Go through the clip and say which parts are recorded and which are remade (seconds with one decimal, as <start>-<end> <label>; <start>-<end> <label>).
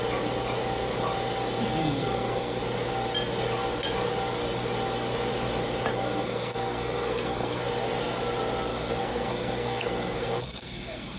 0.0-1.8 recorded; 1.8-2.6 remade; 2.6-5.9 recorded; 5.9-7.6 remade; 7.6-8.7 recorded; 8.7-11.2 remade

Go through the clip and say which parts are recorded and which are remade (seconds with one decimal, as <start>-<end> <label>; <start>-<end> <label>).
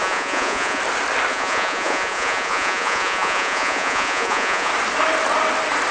0.0-0.8 remade; 0.8-1.3 recorded; 1.3-4.7 remade; 4.7-5.9 recorded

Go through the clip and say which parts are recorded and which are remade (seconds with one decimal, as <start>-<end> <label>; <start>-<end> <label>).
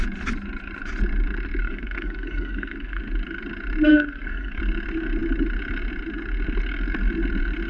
0.0-1.6 recorded; 1.6-3.0 remade; 3.0-3.9 recorded; 3.9-4.6 remade; 4.6-7.7 recorded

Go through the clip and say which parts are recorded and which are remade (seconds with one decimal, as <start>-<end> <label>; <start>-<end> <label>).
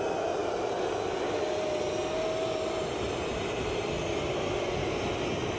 0.0-5.6 recorded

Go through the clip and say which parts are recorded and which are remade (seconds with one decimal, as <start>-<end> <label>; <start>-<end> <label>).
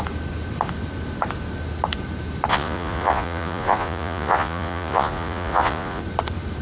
0.0-2.5 recorded; 2.5-6.0 remade; 6.0-6.6 recorded